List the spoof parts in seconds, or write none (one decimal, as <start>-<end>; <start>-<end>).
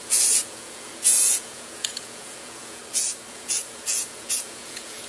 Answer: 0.0-2.8; 3.3-5.1